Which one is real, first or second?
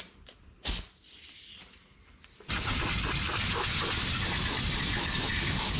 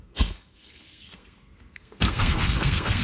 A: first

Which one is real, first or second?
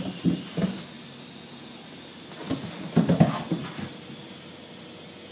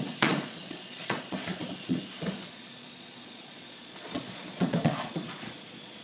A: first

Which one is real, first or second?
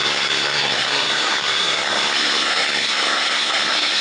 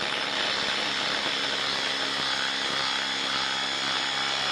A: second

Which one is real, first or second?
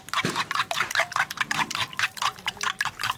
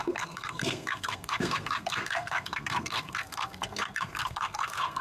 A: first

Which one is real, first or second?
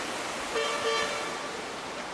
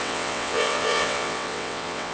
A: first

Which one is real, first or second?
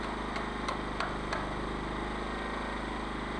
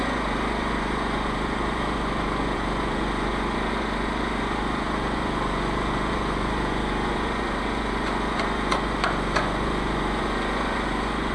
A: first